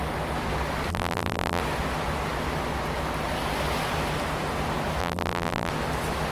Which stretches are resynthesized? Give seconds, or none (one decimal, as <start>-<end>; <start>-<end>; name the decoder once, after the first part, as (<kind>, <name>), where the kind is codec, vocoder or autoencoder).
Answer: 0.9-1.6 (vocoder, BigVGAN v2); 5.0-5.7